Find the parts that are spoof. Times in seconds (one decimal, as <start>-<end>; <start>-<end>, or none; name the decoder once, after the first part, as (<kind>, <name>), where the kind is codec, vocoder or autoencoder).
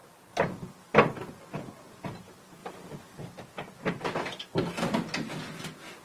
2.6-3.2 (vocoder, BigVGAN v2)